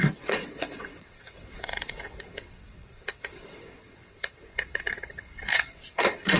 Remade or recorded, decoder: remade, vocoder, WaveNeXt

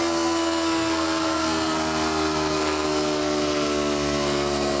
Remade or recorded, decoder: remade, codec, SNAC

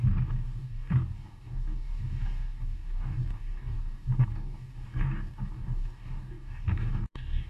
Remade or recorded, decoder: remade, codec, DAC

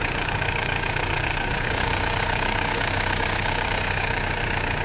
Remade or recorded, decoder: remade, codec, DAC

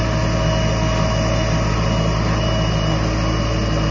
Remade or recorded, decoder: recorded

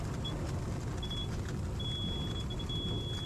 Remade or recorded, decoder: recorded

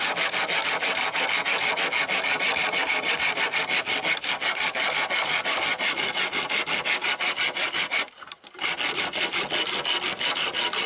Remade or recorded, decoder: recorded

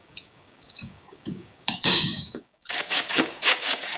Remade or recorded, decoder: remade, codec, DAC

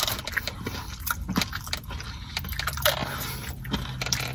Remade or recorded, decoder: recorded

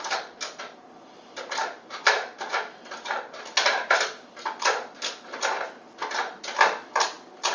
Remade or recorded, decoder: recorded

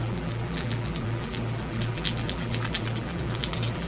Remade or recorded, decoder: remade, vocoder, BigVGAN v2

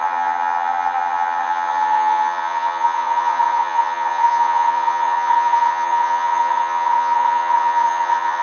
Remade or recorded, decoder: remade, vocoder, HiFi-GAN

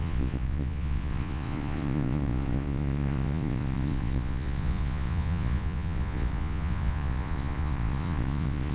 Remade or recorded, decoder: remade, vocoder, Vocos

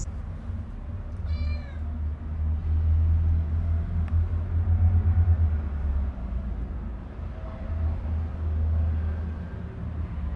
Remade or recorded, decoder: recorded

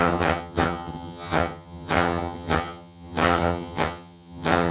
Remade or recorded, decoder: remade, vocoder, HiFi-GAN